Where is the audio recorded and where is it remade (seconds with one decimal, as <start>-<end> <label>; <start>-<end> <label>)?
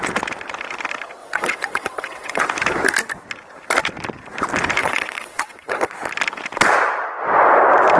0.0-1.2 recorded; 1.2-2.4 remade; 2.4-4.8 recorded; 4.8-5.9 remade; 5.9-8.0 recorded